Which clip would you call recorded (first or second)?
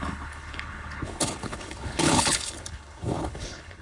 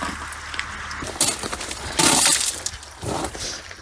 second